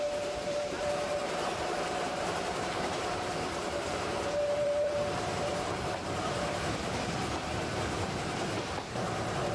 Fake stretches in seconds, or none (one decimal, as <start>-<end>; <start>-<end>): 0.0-5.5; 8.7-9.5